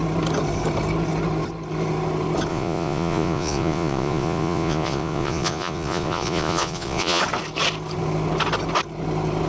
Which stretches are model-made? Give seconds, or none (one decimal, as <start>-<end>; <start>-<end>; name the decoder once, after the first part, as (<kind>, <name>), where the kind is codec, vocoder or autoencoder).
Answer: 2.5-7.2 (vocoder, Vocos)